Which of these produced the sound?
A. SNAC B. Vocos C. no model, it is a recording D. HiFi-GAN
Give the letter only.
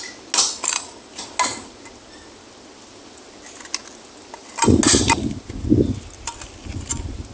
C